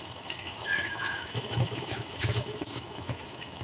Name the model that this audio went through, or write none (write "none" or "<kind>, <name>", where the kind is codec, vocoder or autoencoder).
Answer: autoencoder, DAC-VAE